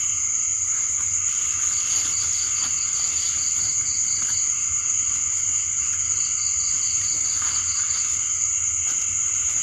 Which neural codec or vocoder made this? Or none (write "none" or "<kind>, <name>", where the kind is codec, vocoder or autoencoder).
none